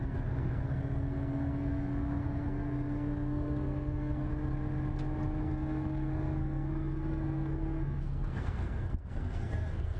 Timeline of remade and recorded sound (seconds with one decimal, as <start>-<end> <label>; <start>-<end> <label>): 0.0-4.3 remade; 4.3-5.4 recorded; 5.4-10.0 remade